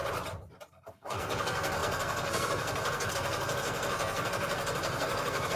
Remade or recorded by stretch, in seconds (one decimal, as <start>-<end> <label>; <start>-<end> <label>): 0.0-0.7 recorded; 0.7-5.6 remade